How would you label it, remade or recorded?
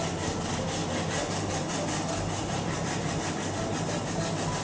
recorded